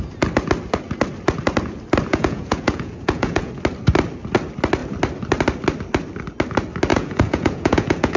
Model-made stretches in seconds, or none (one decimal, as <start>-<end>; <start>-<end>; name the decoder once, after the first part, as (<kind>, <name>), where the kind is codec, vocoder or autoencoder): 2.1-3.5 (vocoder, Vocos); 6.9-8.2